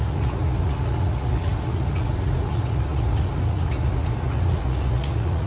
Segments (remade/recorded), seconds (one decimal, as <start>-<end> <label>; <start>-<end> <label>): 0.0-5.5 remade